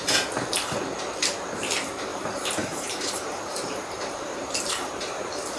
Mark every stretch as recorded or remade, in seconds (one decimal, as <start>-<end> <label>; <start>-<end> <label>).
0.0-2.1 recorded; 2.1-5.6 remade